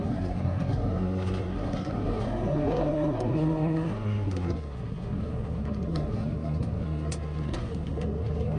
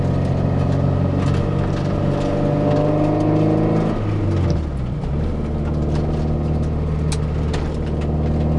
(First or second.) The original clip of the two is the second